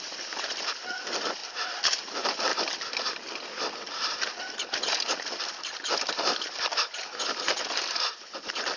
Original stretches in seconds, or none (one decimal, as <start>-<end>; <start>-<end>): 1.4-2.0; 2.5-6.1